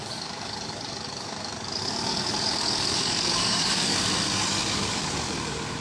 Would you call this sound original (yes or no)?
no